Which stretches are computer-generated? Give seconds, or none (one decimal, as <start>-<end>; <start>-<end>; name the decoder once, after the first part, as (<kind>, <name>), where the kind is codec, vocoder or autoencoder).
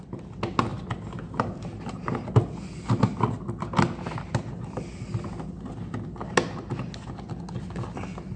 none